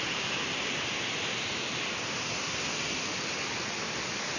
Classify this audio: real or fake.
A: real